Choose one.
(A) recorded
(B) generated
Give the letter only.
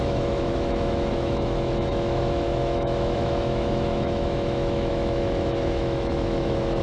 B